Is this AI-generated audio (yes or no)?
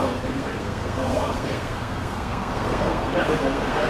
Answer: yes